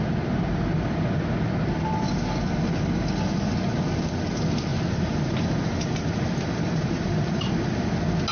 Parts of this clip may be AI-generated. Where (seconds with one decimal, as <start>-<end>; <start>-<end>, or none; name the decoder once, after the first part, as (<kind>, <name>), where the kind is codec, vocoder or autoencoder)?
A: 4.7-7.5 (vocoder, BigVGAN v2)